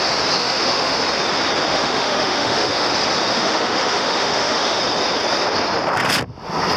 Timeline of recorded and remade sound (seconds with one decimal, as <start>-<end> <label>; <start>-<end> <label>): 0.0-0.4 recorded; 0.4-1.0 remade; 1.0-1.7 recorded; 1.7-2.9 remade; 2.9-3.3 recorded; 3.3-4.8 remade; 4.8-6.8 recorded